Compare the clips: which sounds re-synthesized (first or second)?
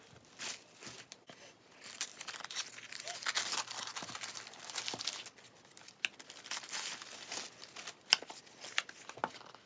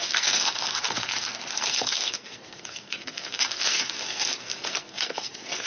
second